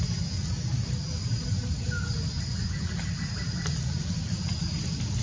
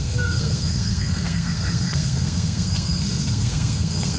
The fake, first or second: second